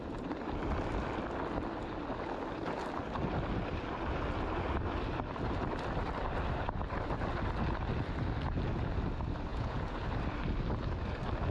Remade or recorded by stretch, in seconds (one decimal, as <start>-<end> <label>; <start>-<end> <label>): 0.0-9.5 recorded; 9.5-10.0 remade; 10.0-11.5 recorded